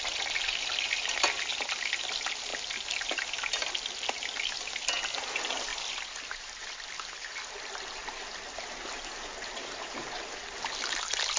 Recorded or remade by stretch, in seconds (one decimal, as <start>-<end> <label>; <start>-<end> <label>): 0.0-11.4 recorded